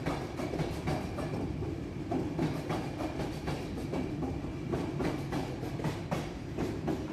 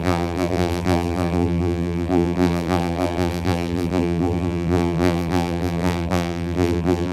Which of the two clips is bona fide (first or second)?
first